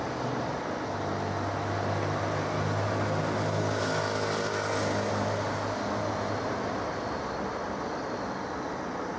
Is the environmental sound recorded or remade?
recorded